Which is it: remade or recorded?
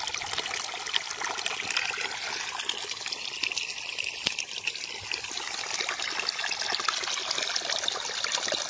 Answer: recorded